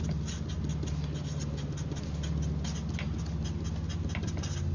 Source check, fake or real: real